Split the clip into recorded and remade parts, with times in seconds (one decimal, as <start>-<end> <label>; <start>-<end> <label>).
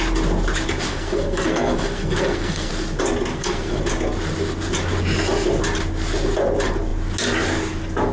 0.0-0.9 recorded; 0.9-2.7 remade; 2.7-3.3 recorded; 3.3-3.8 remade; 3.8-8.1 recorded